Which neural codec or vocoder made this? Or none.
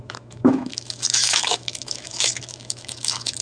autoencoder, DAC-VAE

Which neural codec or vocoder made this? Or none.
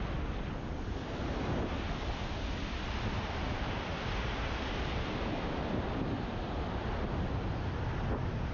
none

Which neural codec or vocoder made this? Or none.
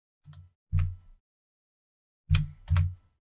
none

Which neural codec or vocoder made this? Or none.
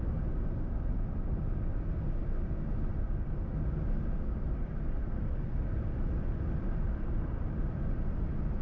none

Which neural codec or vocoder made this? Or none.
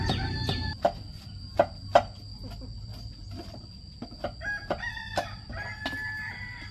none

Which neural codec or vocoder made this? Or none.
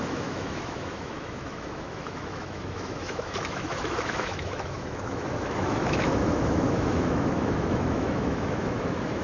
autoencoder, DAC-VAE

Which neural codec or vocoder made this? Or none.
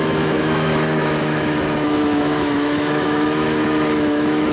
autoencoder, DAC-VAE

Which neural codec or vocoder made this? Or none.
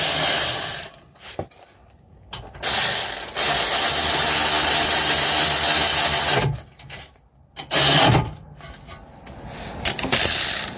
none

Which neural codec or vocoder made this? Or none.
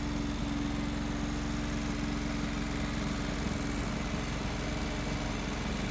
none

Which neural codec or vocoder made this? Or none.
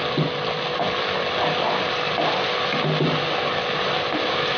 none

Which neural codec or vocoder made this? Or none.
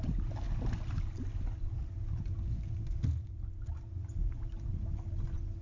none